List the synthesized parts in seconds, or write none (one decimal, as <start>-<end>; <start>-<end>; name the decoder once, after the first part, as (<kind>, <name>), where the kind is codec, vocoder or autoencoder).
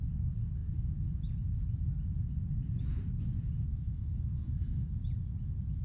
3.7-4.9 (codec, SNAC)